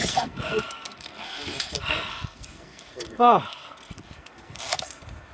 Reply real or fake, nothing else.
fake